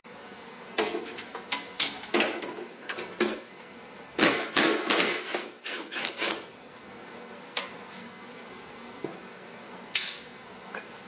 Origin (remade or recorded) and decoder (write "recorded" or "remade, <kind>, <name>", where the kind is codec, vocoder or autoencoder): remade, codec, SNAC